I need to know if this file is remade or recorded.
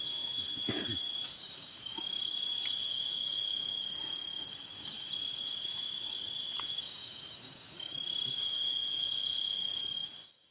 remade